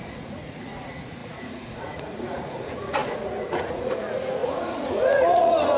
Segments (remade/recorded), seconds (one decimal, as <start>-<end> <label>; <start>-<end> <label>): 0.0-5.8 remade